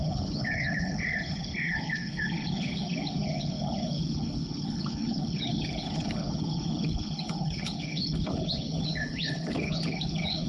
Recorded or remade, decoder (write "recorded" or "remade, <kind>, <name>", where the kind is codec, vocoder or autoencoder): remade, codec, HILCodec